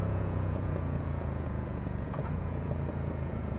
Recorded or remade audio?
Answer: remade